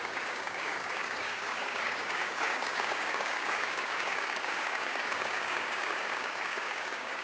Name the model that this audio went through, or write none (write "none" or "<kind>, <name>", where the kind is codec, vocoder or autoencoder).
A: codec, DAC